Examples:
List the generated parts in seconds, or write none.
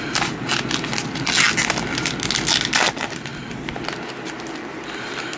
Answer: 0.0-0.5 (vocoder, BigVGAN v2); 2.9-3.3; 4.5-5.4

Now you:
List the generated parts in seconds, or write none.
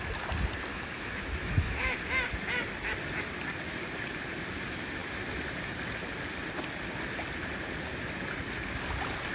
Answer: 0.7-2.1 (autoencoder, DAC-VAE)